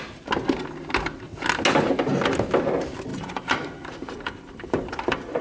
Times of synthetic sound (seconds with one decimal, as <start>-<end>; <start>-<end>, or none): 3.1-5.4